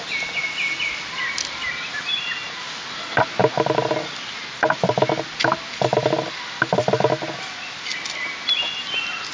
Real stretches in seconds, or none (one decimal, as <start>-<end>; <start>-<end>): 0.0-9.3